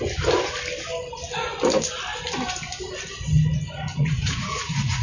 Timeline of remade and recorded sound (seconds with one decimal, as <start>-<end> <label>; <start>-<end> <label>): 0.0-3.9 recorded; 3.9-5.0 remade